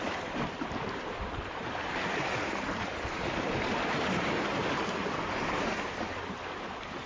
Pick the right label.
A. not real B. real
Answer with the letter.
A